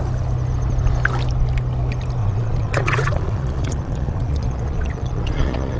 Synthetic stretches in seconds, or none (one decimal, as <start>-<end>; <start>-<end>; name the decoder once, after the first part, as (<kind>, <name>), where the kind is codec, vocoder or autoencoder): 2.2-5.8 (vocoder, Vocos)